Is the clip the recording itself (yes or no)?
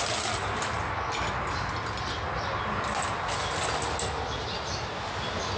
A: yes